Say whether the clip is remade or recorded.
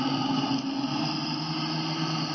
recorded